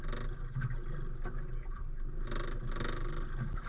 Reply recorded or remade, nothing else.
recorded